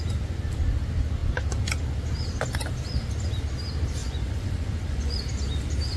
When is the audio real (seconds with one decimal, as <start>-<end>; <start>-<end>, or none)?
0.0-4.0; 5.2-6.0